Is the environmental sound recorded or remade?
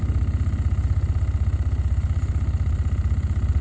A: recorded